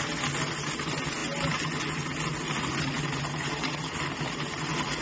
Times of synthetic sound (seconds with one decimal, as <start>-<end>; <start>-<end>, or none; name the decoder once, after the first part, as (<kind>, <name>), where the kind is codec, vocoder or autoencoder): none